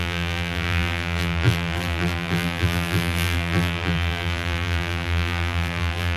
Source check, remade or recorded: remade